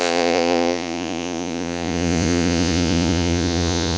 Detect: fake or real fake